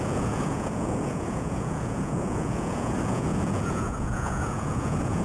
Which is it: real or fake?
fake